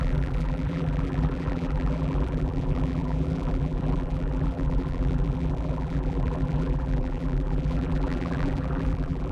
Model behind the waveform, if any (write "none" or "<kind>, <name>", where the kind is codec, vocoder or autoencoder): vocoder, BigVGAN v2